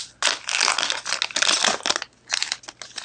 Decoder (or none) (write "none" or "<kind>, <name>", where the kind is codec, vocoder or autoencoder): none